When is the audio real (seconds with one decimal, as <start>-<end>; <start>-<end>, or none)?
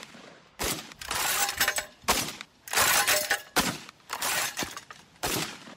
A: 1.4-3.9